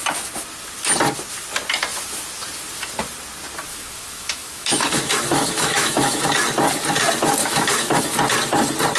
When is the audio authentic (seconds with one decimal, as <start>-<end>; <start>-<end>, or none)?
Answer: 0.0-3.7; 6.2-7.4; 8.0-9.0